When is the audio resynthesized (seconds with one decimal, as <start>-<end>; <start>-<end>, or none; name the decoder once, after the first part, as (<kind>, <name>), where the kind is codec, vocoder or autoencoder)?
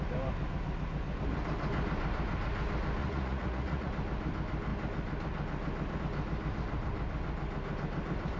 3.0-3.9 (vocoder, Vocos)